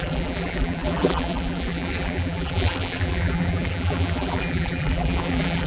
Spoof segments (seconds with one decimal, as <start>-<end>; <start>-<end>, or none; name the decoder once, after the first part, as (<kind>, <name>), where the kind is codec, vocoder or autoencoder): 0.0-5.7 (vocoder, BigVGAN v2)